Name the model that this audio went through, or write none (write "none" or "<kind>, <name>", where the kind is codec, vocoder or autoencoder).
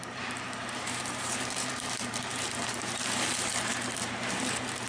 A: vocoder, BigVGAN v2